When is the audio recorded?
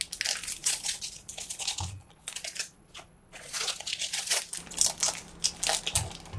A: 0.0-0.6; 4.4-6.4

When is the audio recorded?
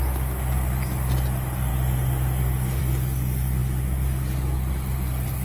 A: 0.0-5.4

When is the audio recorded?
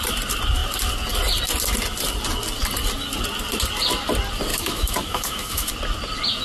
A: 0.0-4.5; 5.7-6.4